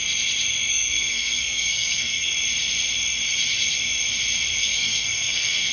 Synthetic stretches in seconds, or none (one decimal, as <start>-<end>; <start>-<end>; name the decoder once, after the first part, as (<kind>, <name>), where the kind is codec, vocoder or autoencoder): 0.7-2.3 (codec, SNAC); 4.6-5.7